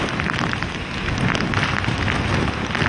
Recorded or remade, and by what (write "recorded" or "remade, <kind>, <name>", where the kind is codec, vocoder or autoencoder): recorded